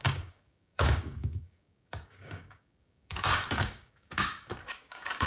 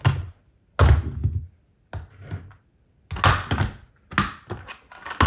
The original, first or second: second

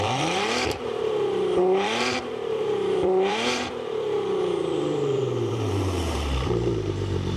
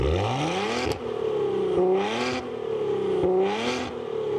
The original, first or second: second